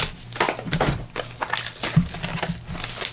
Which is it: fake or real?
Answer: real